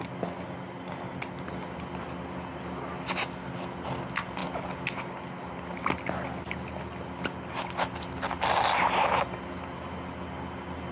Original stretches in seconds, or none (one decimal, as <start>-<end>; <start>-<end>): 0.0-10.9